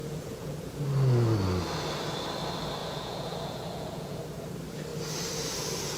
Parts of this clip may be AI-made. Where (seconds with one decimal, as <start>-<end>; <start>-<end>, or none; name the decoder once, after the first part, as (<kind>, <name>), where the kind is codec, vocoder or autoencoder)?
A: 0.0-0.8 (vocoder, Vocos); 2.8-4.2